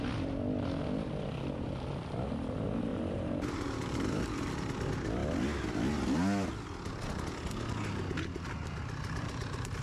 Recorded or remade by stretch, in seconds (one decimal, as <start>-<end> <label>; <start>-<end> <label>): 0.0-2.9 recorded; 2.9-4.2 remade; 4.2-9.8 recorded